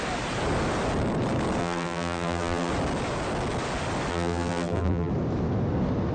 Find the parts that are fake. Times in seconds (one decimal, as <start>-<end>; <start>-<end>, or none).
1.6-2.7; 4.1-5.1